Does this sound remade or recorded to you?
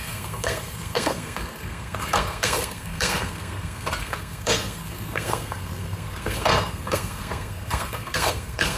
remade